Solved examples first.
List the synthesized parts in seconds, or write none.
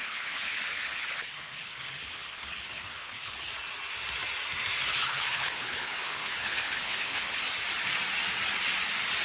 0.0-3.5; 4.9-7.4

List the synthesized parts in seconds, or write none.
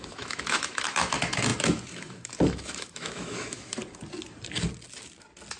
0.0-3.8